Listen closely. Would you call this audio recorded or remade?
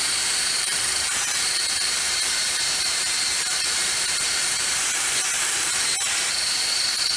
remade